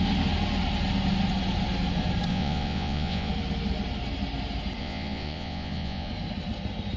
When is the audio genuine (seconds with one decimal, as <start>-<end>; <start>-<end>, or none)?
0.0-2.3; 3.3-4.8; 6.1-7.0